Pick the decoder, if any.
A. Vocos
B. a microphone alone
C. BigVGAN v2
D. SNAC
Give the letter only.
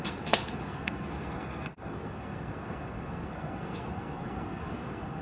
D